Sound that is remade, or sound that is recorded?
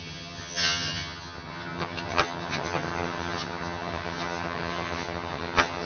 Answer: remade